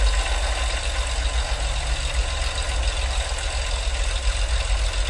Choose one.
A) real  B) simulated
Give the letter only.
A